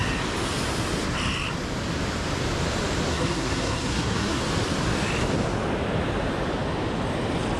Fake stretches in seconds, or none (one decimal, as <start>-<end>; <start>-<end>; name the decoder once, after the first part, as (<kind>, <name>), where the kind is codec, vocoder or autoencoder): 3.1-4.4 (codec, SNAC)

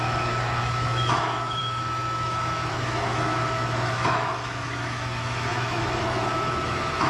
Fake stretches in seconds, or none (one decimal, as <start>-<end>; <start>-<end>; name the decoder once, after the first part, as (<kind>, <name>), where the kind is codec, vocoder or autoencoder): 0.0-7.1 (autoencoder, DAC-VAE)

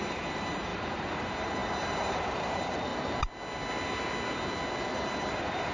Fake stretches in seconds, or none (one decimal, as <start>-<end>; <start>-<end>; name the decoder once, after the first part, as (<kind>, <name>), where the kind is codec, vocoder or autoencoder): 0.0-2.9 (vocoder, BigVGAN v2); 4.9-5.7

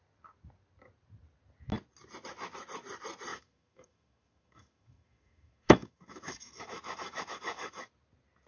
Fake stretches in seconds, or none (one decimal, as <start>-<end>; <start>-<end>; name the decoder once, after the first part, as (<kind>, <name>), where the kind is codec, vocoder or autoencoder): 3.3-7.9 (autoencoder, DAC-VAE)

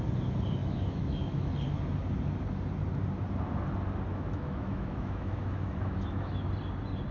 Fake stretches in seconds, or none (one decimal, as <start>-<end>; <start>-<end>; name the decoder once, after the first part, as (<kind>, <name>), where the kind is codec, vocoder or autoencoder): 0.6-1.5 (autoencoder, DAC-VAE); 4.1-6.5

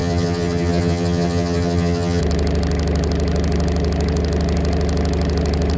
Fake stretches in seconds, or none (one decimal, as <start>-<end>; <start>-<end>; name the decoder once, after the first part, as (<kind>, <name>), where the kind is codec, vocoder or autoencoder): 0.0-2.2 (vocoder, HiFi-GAN)

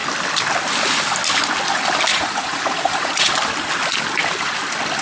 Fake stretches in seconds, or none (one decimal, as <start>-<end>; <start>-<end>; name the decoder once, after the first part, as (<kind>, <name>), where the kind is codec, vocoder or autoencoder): 2.1-3.3 (vocoder, Vocos)

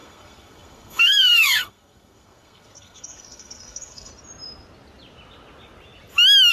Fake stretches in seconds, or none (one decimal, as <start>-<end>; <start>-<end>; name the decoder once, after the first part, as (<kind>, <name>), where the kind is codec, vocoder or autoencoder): 0.0-4.1 (codec, SNAC)